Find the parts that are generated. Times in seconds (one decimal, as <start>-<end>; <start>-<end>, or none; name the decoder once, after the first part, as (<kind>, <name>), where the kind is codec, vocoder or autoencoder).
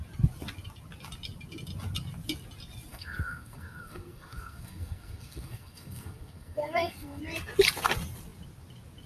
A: 2.9-7.2 (codec, SNAC)